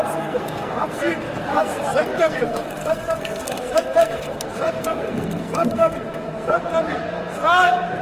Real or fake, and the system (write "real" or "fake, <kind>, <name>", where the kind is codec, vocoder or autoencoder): fake, codec, SNAC